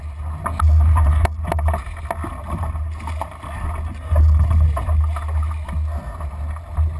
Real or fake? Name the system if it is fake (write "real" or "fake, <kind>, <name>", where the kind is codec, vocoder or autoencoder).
real